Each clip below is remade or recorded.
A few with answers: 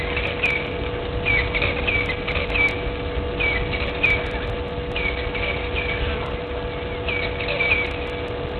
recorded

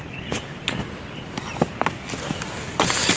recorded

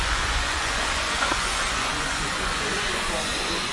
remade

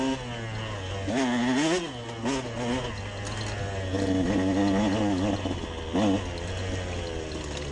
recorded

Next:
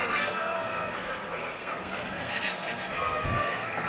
remade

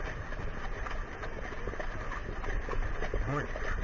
recorded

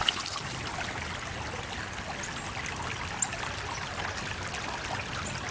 recorded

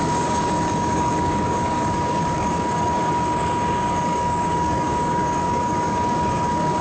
remade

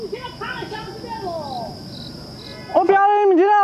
recorded